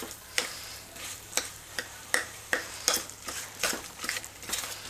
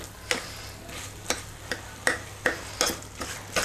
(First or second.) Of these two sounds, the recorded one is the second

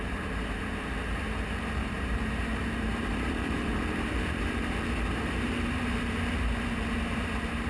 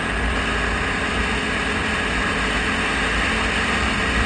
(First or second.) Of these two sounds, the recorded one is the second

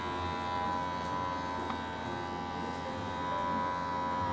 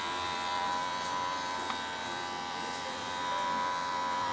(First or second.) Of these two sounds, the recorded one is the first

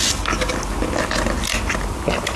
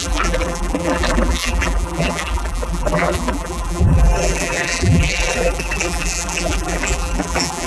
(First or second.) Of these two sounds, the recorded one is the first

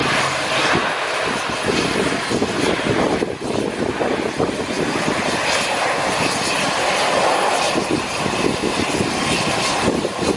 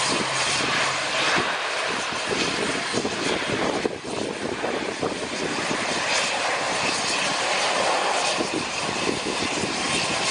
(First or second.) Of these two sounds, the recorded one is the first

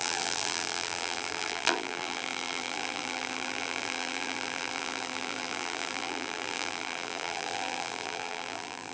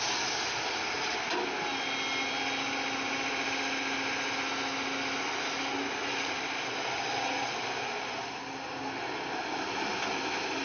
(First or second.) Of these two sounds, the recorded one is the second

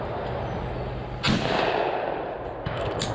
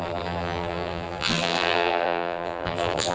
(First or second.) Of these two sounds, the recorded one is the first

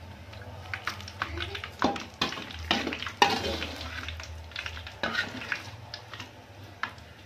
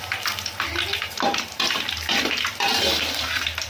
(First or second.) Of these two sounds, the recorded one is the first